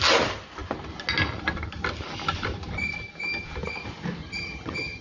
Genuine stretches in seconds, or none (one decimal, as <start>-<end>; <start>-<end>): 0.0-4.2